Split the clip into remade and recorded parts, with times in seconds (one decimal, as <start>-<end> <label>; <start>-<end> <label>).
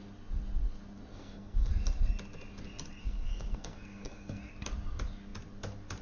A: 0.0-1.1 recorded; 1.1-1.7 remade; 1.7-3.0 recorded; 3.0-4.5 remade; 4.5-6.0 recorded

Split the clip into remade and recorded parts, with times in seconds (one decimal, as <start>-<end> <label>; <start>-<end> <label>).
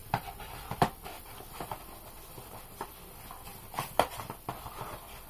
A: 0.0-5.3 recorded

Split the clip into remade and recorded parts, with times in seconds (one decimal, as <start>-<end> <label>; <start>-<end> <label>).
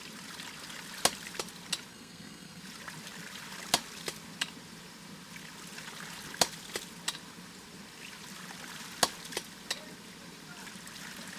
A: 0.0-1.9 recorded; 1.9-2.6 remade; 2.6-11.4 recorded